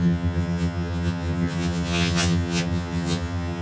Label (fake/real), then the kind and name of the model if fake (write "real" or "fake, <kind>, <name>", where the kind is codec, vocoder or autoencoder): fake, vocoder, HiFi-GAN